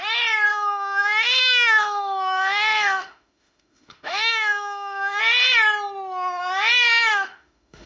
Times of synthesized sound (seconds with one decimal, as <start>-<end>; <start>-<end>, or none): 0.5-5.2; 7.1-7.9

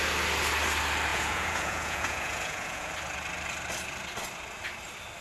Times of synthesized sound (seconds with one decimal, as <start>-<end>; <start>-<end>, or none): 1.1-2.9

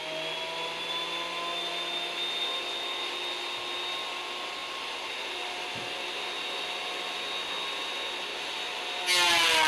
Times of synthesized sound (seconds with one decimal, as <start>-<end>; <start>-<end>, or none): none

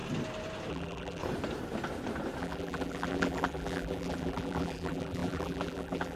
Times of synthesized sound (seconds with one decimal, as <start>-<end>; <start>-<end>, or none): 0.7-1.2; 2.4-6.2